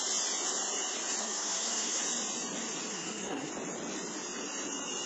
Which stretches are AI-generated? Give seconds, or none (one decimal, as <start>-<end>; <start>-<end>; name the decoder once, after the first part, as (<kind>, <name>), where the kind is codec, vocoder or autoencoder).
1.2-2.0 (codec, SNAC); 2.9-3.5